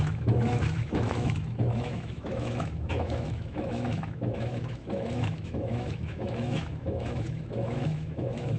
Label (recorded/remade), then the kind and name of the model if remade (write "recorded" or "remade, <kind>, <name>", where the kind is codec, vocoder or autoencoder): remade, autoencoder, DAC-VAE